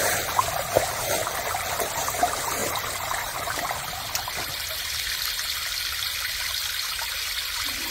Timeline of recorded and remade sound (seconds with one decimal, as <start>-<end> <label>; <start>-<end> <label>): 0.0-7.9 recorded